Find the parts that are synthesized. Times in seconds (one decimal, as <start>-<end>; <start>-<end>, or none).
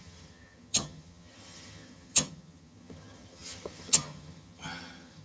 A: 0.0-5.2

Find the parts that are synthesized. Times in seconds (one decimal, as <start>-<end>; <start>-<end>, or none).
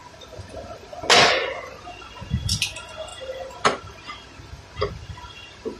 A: none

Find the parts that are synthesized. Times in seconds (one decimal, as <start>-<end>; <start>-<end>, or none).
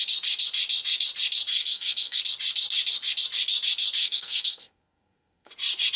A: 1.5-2.2; 4.0-5.5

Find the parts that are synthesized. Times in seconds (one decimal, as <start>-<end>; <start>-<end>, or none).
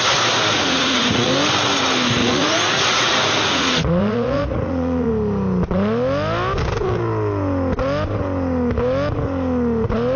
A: 0.5-1.3; 2.2-5.1